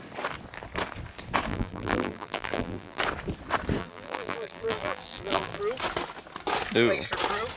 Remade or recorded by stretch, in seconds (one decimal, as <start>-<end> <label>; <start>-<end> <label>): 0.0-1.5 recorded; 1.5-3.0 remade; 3.0-3.8 recorded; 3.8-5.6 remade; 5.6-7.6 recorded